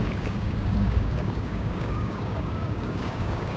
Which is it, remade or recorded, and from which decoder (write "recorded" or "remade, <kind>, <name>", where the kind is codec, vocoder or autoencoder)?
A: remade, codec, DAC